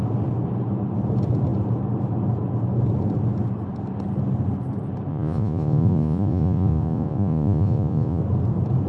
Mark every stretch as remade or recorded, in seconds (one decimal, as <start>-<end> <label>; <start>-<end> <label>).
0.0-5.1 recorded; 5.1-8.2 remade; 8.2-8.9 recorded